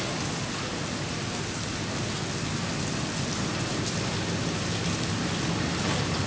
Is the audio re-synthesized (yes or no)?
no